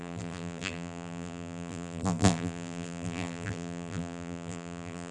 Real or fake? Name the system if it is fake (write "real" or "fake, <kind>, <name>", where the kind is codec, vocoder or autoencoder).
fake, vocoder, BigVGAN v2